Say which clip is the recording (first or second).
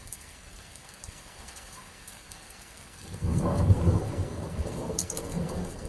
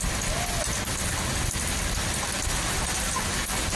second